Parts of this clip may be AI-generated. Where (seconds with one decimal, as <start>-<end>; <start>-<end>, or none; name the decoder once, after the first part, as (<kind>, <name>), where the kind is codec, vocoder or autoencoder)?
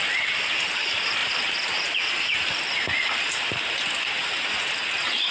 none